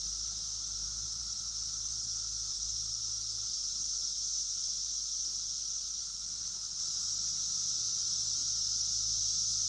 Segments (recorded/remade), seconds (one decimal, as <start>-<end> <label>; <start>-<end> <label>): 0.0-9.7 recorded